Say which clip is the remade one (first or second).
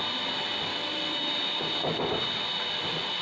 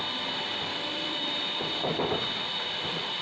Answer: second